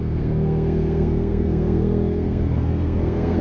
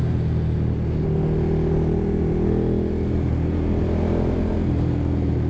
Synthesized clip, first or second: first